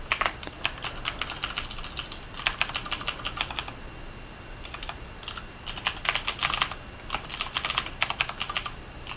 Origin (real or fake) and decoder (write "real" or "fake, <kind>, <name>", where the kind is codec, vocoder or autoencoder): real